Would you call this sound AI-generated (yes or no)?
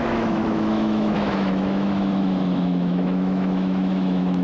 yes